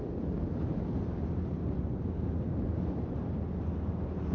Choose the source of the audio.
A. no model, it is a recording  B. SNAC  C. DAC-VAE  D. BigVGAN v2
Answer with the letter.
A